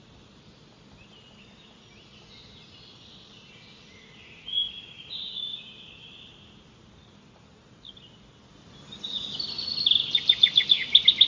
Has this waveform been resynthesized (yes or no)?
no